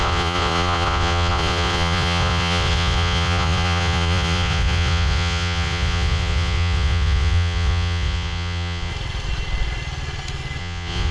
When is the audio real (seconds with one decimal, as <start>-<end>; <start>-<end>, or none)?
8.9-10.6